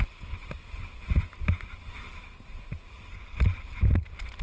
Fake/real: real